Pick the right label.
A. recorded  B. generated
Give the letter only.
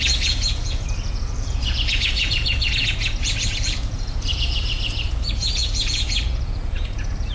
B